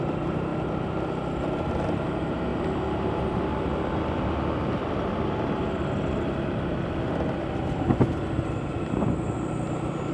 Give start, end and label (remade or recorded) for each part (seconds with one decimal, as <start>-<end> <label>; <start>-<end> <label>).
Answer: 0.0-0.5 remade; 0.5-1.9 recorded; 1.9-2.5 remade; 2.5-7.5 recorded; 7.5-10.1 remade